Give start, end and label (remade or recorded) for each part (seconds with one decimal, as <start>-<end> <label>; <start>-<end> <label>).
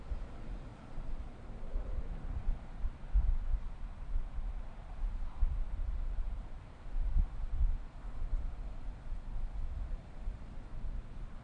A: 0.0-0.7 recorded; 0.7-2.0 remade; 2.0-4.9 recorded; 4.9-7.5 remade; 7.5-11.4 recorded